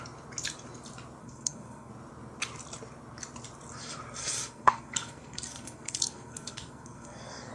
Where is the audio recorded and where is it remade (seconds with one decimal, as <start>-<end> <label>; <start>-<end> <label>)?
0.0-1.2 recorded; 1.2-1.9 remade; 1.9-4.2 recorded; 4.2-7.5 remade